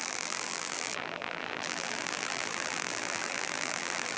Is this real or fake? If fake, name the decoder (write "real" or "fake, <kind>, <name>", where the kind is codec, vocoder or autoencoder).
fake, vocoder, BigVGAN v2